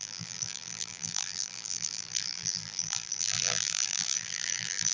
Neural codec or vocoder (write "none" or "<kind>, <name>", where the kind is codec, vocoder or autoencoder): vocoder, BigVGAN v2